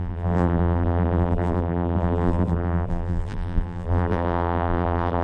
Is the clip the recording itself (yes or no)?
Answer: no